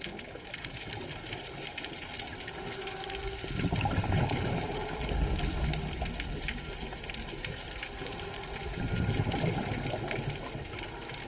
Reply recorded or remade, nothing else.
recorded